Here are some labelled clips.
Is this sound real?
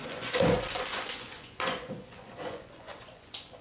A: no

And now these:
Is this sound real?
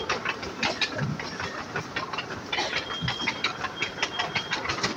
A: yes